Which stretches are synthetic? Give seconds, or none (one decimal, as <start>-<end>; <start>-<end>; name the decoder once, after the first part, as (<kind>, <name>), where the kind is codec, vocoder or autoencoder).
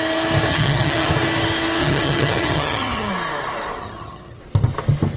0.5-1.1 (vocoder, HiFi-GAN); 1.8-3.1; 3.8-4.4